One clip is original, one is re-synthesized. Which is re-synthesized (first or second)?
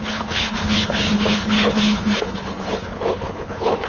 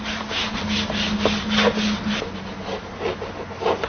first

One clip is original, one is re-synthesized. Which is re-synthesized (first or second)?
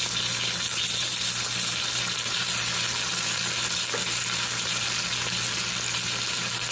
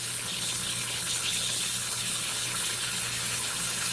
second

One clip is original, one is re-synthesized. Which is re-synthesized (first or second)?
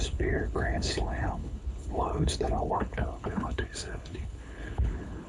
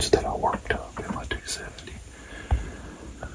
first